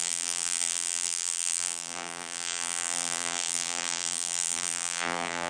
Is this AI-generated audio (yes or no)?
yes